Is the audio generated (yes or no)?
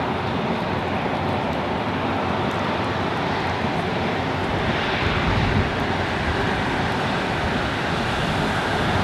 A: yes